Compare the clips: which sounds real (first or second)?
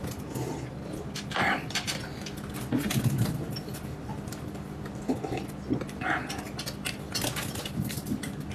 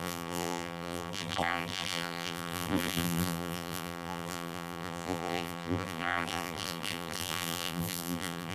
first